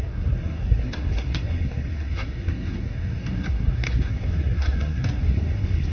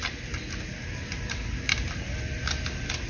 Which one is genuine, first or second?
second